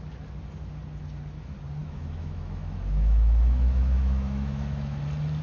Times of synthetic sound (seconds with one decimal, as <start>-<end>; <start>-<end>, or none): 1.8-5.0